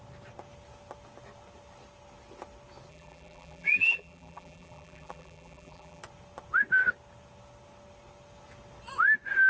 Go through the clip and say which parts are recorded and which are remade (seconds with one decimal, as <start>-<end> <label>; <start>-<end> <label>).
0.0-2.9 recorded; 2.9-6.0 remade; 6.0-9.5 recorded